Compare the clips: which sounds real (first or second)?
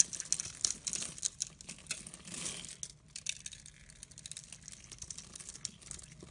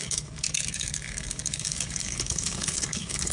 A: first